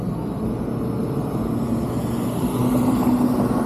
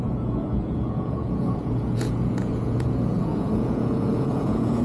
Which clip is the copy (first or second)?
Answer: second